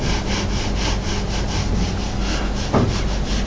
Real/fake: real